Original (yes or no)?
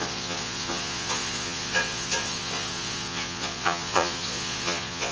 no